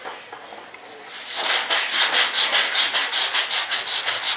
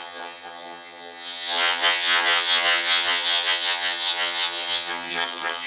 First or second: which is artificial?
second